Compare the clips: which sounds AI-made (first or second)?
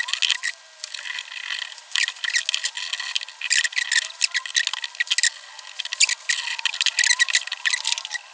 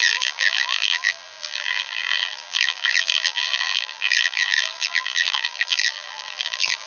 second